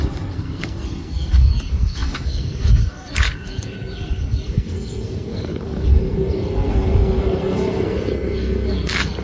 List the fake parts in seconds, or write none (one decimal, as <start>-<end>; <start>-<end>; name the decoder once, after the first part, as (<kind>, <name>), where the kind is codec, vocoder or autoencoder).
0.0-9.2 (codec, SNAC)